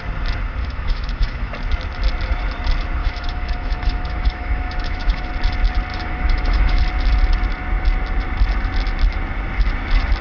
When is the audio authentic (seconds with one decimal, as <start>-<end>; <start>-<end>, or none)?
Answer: 0.0-0.6; 1.5-3.0; 5.3-5.9; 6.8-10.2